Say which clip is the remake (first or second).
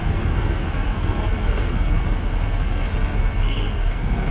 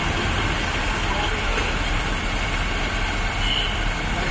first